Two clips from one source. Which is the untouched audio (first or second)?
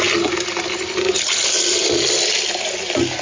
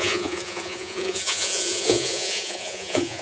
first